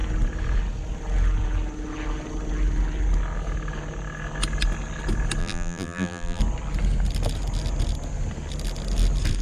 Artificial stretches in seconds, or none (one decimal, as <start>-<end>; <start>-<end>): 5.4-6.4

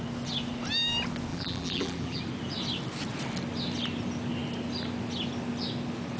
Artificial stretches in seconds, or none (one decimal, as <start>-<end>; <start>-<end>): 1.3-2.2

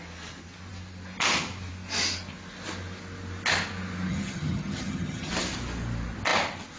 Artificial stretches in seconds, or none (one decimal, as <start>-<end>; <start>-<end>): 4.1-5.3

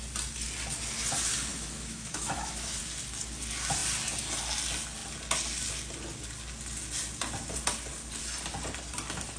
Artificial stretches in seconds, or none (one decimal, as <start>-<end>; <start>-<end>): 1.5-2.8

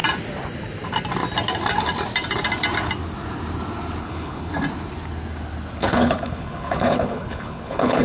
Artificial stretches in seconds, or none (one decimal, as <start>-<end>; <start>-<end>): 4.0-4.5; 5.8-8.0